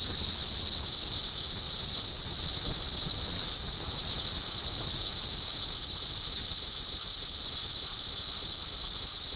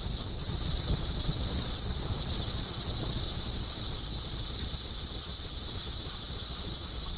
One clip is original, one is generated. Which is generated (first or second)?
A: second